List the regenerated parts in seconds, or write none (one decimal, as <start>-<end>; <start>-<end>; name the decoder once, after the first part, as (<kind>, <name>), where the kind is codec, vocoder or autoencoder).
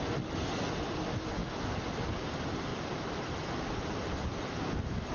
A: none